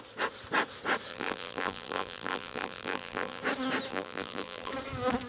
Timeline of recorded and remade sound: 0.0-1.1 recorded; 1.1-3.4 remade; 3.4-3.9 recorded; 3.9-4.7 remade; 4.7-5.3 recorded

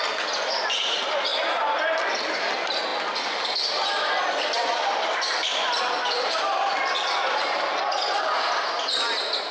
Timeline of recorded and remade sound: 0.0-9.5 recorded